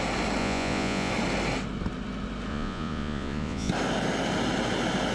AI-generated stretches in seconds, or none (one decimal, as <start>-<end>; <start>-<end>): 0.4-1.1; 2.5-3.7